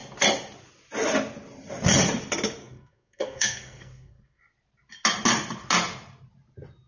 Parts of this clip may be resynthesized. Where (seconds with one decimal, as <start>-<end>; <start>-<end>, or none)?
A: 2.6-4.4